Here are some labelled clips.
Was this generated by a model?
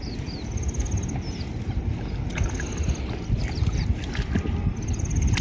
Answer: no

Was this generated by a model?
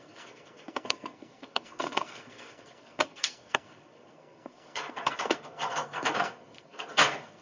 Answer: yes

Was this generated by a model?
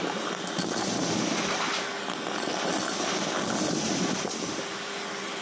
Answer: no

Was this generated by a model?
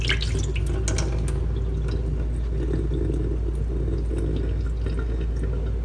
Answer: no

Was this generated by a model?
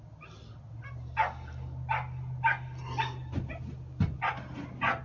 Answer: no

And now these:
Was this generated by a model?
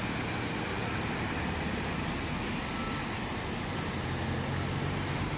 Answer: no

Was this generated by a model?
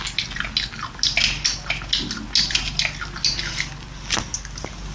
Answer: no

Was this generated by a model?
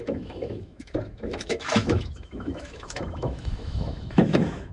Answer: yes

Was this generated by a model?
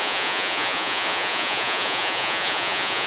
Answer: yes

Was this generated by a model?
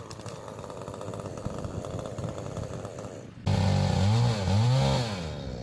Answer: no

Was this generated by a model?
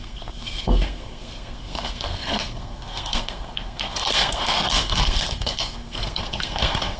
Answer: yes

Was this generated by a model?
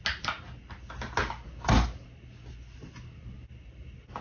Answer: no